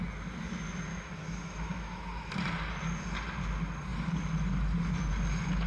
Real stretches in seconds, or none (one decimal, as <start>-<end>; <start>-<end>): 0.0-0.9; 2.3-5.7